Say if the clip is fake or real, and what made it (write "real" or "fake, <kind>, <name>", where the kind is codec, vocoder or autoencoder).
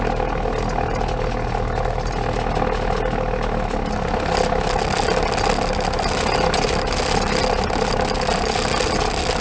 real